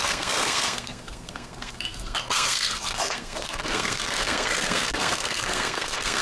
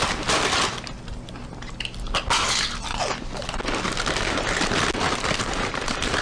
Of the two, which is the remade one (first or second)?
first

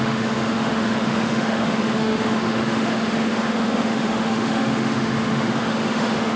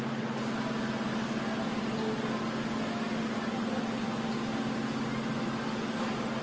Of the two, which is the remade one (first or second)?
first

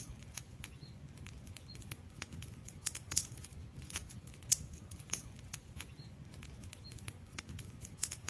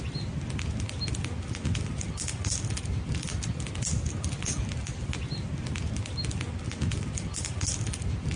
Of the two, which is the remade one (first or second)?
first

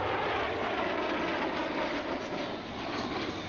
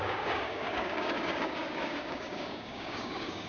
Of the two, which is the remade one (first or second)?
second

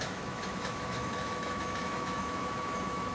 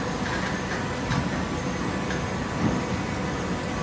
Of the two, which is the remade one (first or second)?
first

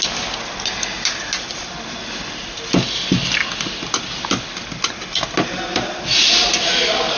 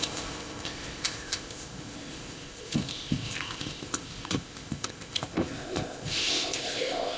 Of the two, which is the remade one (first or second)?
second